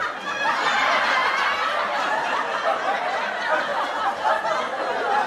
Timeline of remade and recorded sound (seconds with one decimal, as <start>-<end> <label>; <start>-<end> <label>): 0.0-5.3 recorded